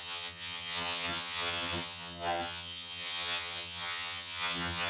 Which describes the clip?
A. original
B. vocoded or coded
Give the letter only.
B